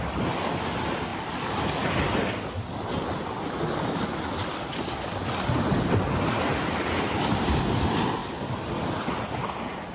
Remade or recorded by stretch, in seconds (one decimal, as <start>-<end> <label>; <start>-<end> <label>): 0.0-8.2 recorded; 8.2-9.4 remade; 9.4-9.9 recorded